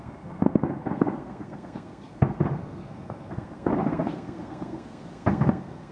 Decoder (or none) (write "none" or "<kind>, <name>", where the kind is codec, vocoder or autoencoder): codec, SNAC